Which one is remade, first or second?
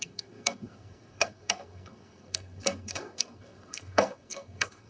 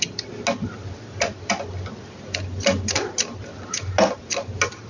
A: first